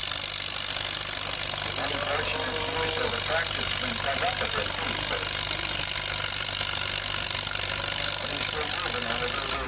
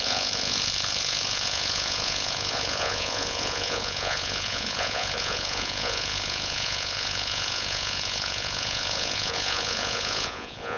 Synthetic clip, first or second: second